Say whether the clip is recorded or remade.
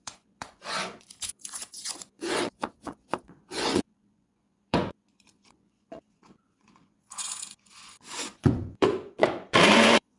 remade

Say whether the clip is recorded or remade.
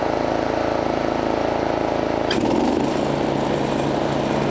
recorded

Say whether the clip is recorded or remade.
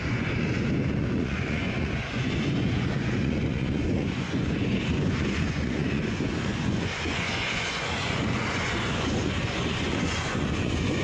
remade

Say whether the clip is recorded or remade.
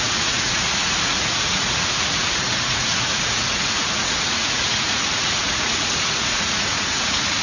remade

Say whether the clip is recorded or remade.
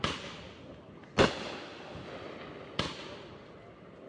recorded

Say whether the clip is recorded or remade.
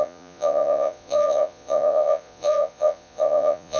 remade